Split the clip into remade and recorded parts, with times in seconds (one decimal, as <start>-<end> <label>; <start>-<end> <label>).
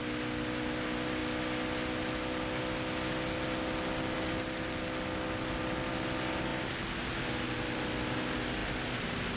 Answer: 0.0-9.4 recorded